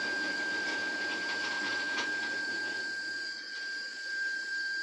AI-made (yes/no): yes